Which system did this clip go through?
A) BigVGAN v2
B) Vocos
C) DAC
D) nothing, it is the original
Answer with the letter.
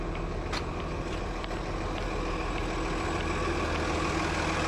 D